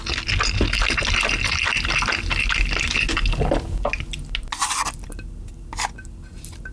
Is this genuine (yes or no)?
yes